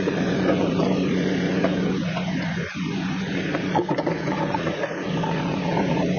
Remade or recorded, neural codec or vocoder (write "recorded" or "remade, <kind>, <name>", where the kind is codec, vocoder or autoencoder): remade, vocoder, Vocos